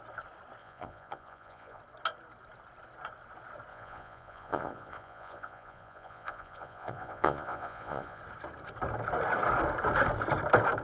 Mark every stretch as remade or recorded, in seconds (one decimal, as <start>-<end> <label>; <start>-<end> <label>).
0.0-0.6 recorded; 0.6-1.8 remade; 1.8-3.7 recorded; 3.7-8.2 remade; 8.2-10.8 recorded